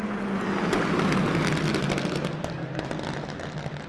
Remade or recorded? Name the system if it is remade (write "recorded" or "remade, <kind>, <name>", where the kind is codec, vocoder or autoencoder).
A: recorded